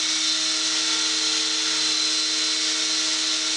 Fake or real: real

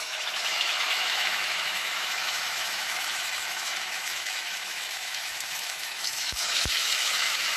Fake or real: fake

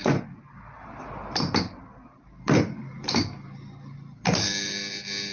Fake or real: real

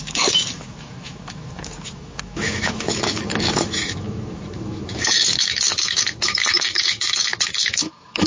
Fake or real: fake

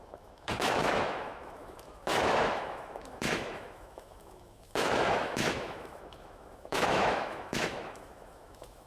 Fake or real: fake